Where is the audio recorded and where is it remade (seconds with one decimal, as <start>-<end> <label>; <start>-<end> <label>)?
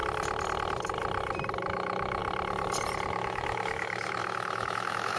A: 0.0-1.7 recorded; 1.7-2.2 remade; 2.2-3.1 recorded; 3.1-5.2 remade